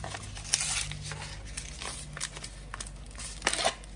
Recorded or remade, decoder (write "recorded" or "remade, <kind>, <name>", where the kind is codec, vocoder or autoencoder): recorded